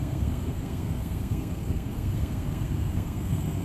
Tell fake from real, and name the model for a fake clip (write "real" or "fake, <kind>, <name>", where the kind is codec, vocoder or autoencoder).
fake, codec, SNAC